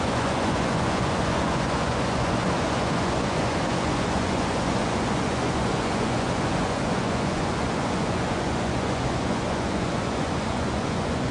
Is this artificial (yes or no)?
yes